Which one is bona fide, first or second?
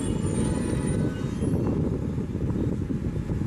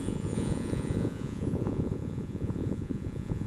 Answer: first